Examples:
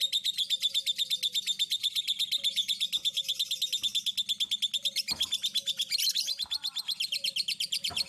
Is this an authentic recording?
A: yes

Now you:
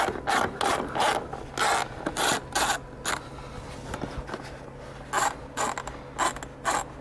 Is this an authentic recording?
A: yes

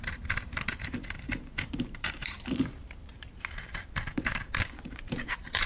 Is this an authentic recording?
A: no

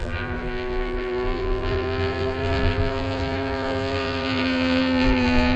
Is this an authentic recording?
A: no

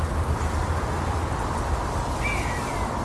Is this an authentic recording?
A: yes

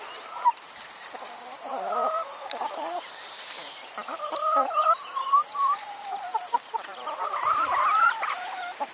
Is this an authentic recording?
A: no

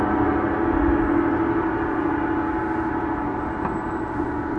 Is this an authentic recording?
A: yes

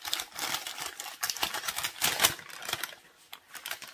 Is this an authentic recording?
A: no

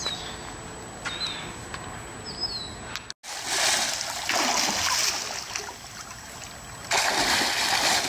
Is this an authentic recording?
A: yes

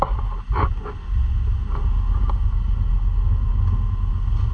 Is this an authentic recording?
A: yes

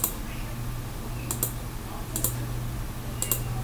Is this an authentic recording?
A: yes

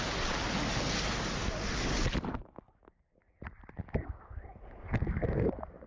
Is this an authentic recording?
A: yes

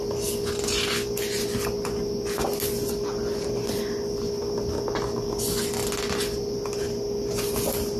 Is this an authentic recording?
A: yes